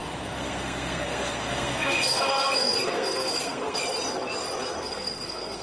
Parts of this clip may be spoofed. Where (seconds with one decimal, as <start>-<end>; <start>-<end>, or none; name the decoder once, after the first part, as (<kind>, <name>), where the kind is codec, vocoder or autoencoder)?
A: 0.0-3.8 (codec, SNAC); 4.8-5.6